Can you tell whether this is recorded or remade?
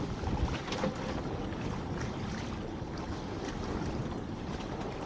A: recorded